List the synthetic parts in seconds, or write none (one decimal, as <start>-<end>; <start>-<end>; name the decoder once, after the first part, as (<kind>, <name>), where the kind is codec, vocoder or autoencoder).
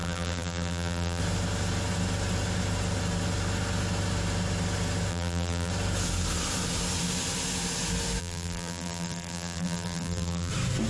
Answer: 0.0-1.2 (vocoder, BigVGAN v2); 5.1-5.7; 8.2-10.5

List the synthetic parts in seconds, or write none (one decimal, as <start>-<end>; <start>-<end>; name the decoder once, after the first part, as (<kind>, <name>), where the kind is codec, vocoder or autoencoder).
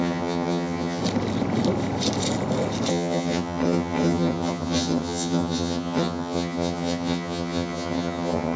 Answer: 0.0-1.0 (vocoder, HiFi-GAN); 2.9-8.6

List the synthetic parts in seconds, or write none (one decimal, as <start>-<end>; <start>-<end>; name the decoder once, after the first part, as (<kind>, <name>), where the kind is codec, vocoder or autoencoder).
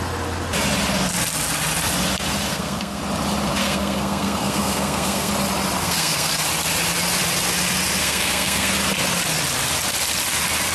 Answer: 2.5-3.0 (codec, SNAC); 3.6-5.3; 5.8-6.3; 8.0-8.7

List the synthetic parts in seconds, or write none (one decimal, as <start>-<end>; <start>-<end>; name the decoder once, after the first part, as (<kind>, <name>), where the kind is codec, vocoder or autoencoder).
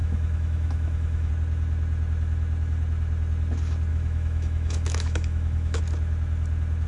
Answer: 0.0-1.3 (autoencoder, DAC-VAE); 3.9-5.8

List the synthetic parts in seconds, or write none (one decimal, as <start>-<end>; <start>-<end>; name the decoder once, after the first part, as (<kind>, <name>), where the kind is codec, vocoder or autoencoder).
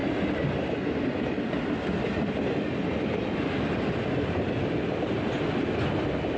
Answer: none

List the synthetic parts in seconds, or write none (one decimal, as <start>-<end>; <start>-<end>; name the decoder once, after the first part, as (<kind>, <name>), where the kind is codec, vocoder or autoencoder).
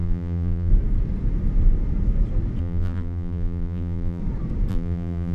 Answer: 0.0-0.7 (vocoder, BigVGAN v2); 2.6-4.2; 4.7-5.3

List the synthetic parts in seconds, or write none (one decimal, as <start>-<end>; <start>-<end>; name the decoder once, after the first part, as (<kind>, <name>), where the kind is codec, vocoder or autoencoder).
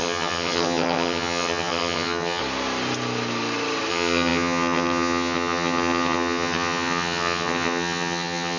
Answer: 0.0-2.4 (vocoder, HiFi-GAN); 3.9-8.6